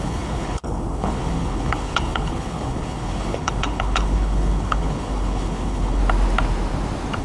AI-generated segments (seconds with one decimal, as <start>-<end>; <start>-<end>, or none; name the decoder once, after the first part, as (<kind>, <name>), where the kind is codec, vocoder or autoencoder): 0.0-6.0 (codec, HILCodec)